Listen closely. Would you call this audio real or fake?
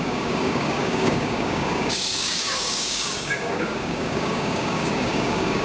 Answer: fake